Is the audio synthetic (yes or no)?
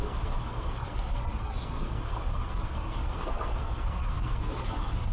yes